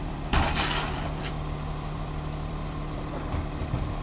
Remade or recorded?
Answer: remade